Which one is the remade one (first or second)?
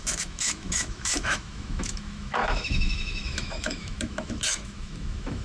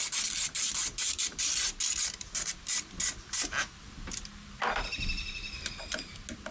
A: first